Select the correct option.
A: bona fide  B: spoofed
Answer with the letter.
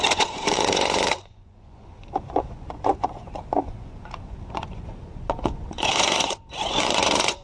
B